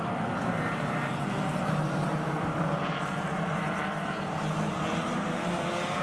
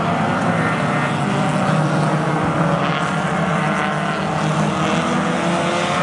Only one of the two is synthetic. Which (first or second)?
first